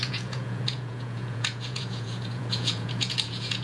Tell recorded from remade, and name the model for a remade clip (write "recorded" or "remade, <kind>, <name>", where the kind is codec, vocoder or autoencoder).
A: remade, vocoder, Vocos